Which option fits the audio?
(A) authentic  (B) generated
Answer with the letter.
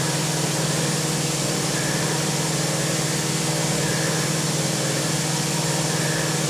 A